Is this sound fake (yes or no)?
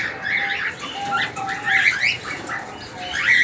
no